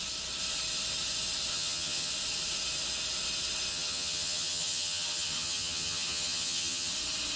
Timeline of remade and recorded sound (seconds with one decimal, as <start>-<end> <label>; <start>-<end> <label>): 0.0-1.5 recorded; 1.5-2.1 remade; 2.1-3.7 recorded; 3.7-6.9 remade; 6.9-7.4 recorded